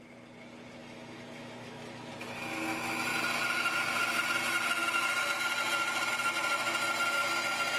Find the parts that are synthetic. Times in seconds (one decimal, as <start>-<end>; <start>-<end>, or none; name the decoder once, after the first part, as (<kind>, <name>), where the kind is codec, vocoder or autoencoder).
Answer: 0.8-2.1 (autoencoder, DAC-VAE)